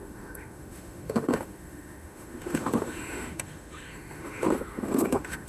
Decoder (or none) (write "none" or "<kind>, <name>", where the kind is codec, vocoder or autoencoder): autoencoder, DAC-VAE